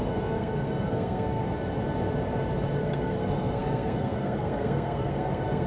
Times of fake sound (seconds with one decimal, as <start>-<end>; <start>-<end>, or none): 0.0-1.4; 2.8-5.7